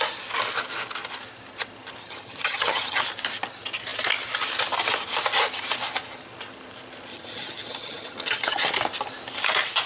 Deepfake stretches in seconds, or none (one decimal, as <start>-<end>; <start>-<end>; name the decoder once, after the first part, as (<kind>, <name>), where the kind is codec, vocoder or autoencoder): 2.0-3.0 (vocoder, HiFi-GAN); 7.1-8.7